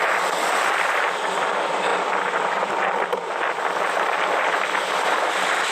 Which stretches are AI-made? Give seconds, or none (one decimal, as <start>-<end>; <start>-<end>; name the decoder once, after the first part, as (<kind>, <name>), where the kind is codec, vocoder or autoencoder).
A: none